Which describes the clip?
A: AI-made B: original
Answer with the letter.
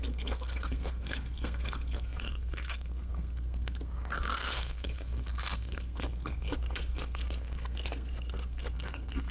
A